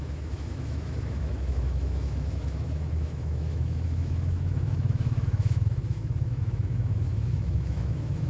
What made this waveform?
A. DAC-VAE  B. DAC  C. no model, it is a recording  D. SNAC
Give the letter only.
A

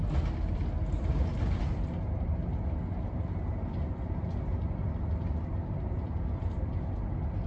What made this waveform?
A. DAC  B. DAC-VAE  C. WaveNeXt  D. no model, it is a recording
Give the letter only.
D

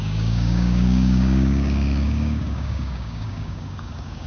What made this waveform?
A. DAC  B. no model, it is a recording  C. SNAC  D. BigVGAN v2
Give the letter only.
A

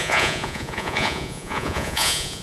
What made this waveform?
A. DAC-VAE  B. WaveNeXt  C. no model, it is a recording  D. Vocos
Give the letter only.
D